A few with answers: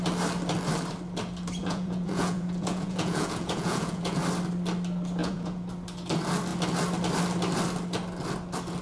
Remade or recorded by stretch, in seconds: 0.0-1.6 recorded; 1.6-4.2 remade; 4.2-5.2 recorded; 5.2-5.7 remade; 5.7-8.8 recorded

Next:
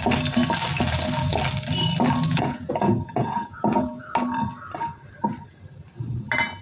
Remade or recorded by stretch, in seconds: 0.0-2.3 recorded; 2.3-4.0 remade; 4.0-6.6 recorded